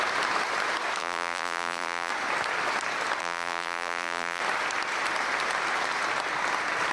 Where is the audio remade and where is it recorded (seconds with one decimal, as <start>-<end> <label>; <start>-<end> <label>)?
0.0-1.0 recorded; 1.0-2.1 remade; 2.1-3.2 recorded; 3.2-4.4 remade; 4.4-6.9 recorded